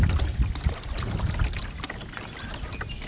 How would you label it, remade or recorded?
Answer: recorded